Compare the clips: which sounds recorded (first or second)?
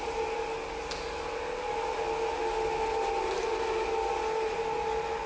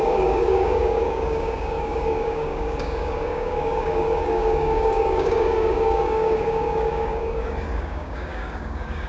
first